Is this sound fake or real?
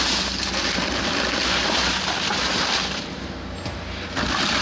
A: real